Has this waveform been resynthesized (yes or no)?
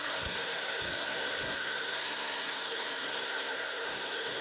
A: yes